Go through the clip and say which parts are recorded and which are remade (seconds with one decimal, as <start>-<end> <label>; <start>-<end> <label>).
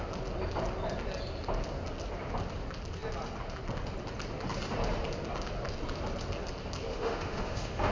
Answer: 0.0-6.9 recorded; 6.9-7.9 remade